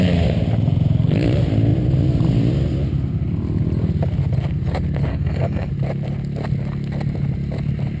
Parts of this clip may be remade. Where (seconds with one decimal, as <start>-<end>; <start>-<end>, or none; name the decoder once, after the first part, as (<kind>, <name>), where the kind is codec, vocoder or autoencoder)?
5.1-5.7 (codec, SNAC)